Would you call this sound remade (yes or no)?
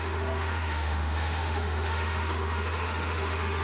yes